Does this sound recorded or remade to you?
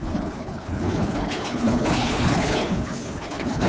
remade